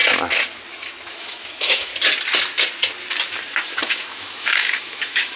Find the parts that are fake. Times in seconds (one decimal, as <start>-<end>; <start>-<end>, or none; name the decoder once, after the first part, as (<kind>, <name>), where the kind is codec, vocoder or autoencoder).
1.1-1.9 (autoencoder, DAC-VAE); 3.9-5.4